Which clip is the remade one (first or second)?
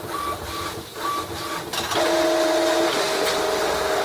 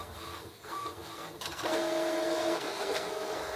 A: second